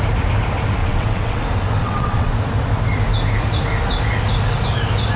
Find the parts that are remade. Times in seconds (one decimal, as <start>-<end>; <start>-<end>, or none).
0.8-1.4; 1.8-2.3